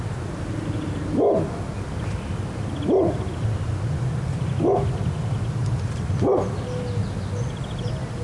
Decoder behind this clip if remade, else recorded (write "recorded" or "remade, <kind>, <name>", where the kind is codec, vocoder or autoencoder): recorded